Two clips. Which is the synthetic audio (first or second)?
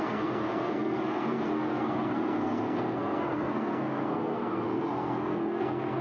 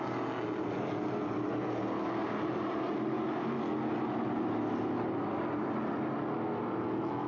first